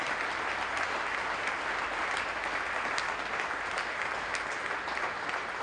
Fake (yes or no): no